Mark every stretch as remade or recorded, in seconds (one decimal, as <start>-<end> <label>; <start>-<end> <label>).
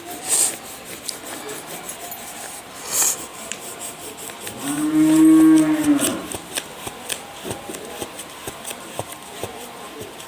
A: 0.0-3.3 recorded; 3.3-4.1 remade; 4.1-8.7 recorded; 8.7-9.4 remade; 9.4-10.3 recorded